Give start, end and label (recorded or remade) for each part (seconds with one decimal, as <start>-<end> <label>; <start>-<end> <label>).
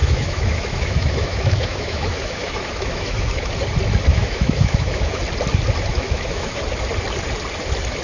0.0-3.5 remade; 3.5-4.1 recorded; 4.1-5.2 remade; 5.2-5.9 recorded; 5.9-6.6 remade; 6.6-8.0 recorded